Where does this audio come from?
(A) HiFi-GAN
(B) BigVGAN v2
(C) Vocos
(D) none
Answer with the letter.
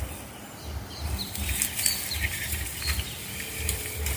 B